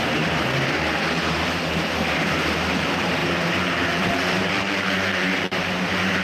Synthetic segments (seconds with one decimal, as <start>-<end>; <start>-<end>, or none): 0.0-6.2